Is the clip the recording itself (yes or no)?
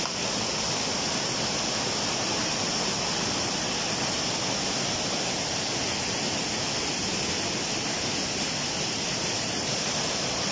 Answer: yes